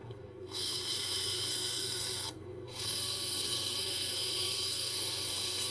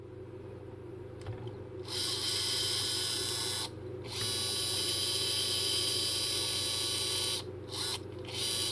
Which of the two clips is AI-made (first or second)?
first